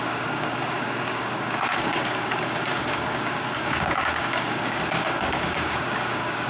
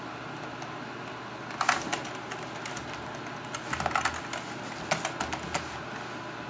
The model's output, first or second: first